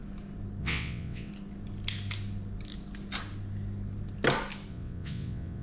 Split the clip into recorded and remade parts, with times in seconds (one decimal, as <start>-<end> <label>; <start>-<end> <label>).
0.0-0.6 recorded; 0.6-1.3 remade; 1.3-4.7 recorded; 4.7-5.6 remade

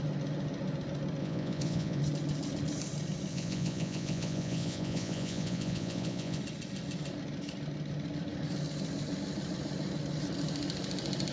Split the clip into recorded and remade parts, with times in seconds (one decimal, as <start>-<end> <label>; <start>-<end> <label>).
0.0-1.2 recorded; 1.2-2.0 remade; 2.0-3.3 recorded; 3.3-6.4 remade; 6.4-11.3 recorded

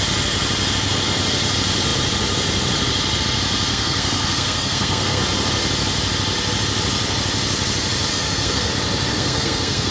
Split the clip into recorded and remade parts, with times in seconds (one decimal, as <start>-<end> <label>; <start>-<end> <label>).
0.0-3.7 recorded; 3.7-5.2 remade; 5.2-8.1 recorded; 8.1-8.7 remade; 8.7-9.1 recorded; 9.1-9.9 remade

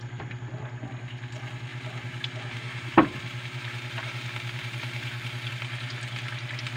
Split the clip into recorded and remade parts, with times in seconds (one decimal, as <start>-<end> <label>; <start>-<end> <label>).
0.0-1.7 recorded; 1.7-5.5 remade; 5.5-6.8 recorded

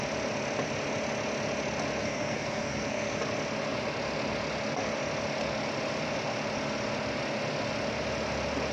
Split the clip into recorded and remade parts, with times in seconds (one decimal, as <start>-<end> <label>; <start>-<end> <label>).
0.0-2.0 recorded; 2.0-3.2 remade; 3.2-8.7 recorded

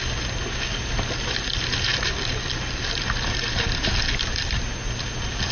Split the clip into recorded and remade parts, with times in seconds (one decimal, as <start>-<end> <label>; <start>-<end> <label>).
0.0-1.9 recorded; 1.9-3.9 remade; 3.9-5.5 recorded